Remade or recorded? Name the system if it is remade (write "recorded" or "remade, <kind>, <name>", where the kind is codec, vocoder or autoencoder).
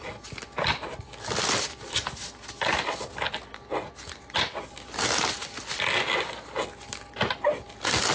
recorded